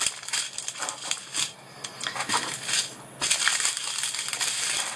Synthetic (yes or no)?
no